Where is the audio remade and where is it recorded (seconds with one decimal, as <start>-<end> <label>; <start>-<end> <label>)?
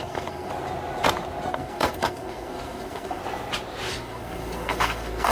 0.0-0.5 remade; 0.5-1.5 recorded; 1.5-3.2 remade; 3.2-3.9 recorded; 3.9-5.3 remade